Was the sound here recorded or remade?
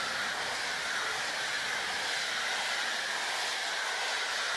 recorded